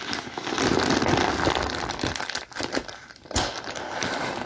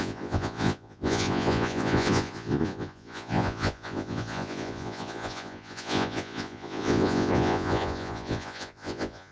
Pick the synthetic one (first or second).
second